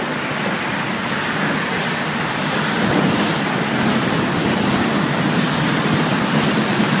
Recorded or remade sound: recorded